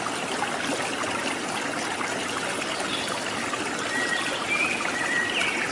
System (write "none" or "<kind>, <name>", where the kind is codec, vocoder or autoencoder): none